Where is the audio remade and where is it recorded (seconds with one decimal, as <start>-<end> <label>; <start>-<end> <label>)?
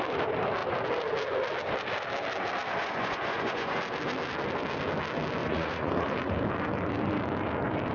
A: 0.0-2.8 recorded; 2.8-3.8 remade; 3.8-5.4 recorded; 5.4-6.3 remade; 6.3-7.9 recorded